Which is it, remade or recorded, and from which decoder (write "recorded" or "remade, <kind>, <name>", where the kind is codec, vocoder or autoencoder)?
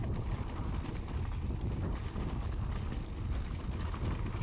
recorded